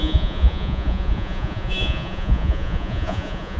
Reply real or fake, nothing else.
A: fake